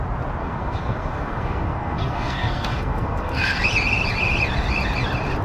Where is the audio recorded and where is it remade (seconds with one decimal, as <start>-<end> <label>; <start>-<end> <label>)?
0.0-0.4 recorded; 0.4-3.6 remade; 3.6-5.4 recorded